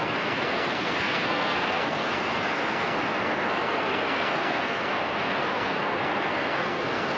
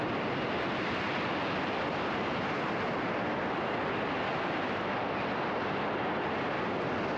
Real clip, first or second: second